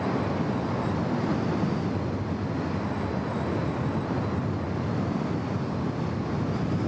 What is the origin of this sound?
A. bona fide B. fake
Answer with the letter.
A